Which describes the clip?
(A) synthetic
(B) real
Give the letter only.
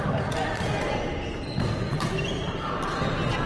B